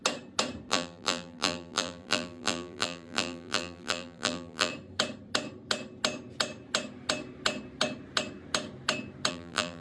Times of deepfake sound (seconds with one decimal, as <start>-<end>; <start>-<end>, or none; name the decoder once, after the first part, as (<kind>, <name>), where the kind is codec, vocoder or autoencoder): 0.7-4.7 (vocoder, BigVGAN v2); 9.3-9.8